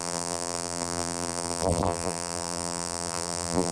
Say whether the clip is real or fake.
fake